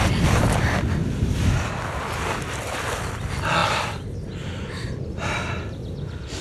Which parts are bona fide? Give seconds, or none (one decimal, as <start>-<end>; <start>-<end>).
0.0-6.4